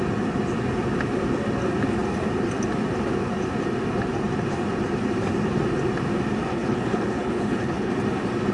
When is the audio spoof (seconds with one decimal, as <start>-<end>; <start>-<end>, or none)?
6.5-7.9